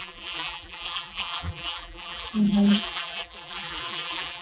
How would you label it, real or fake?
fake